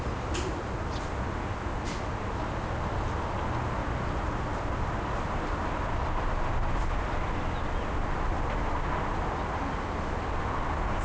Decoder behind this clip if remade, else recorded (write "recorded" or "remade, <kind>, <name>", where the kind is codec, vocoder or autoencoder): recorded